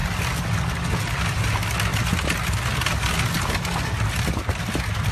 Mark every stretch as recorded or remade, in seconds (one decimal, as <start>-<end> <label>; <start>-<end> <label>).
0.0-5.1 recorded